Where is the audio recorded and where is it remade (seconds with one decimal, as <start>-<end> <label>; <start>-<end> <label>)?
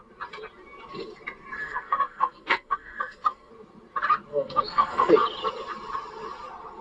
0.0-1.6 recorded; 1.6-3.5 remade; 3.5-4.3 recorded; 4.3-5.1 remade; 5.1-6.8 recorded